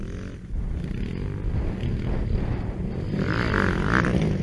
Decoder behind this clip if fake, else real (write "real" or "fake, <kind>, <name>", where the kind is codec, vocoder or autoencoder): real